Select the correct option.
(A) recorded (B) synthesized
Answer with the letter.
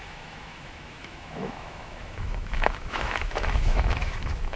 B